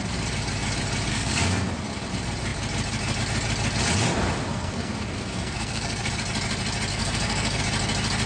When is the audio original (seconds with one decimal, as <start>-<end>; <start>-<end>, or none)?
0.0-1.1; 1.7-4.5; 6.1-6.9; 7.6-8.3